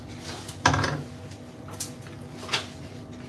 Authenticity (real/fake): real